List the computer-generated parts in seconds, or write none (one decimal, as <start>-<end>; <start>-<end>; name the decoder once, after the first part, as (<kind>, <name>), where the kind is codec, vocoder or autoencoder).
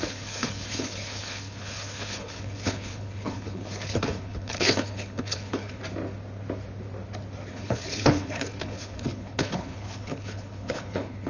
0.0-5.8 (codec, HILCodec); 7.5-11.3